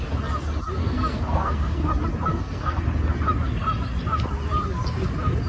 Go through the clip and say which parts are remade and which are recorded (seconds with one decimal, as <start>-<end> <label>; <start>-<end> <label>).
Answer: 0.0-0.8 recorded; 0.8-1.9 remade; 1.9-2.3 recorded; 2.3-2.8 remade; 2.8-5.5 recorded